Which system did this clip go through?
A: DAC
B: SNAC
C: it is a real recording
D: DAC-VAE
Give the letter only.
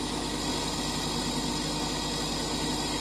C